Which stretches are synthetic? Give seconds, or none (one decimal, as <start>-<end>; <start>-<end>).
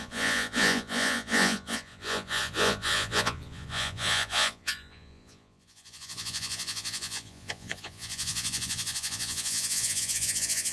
0.0-10.7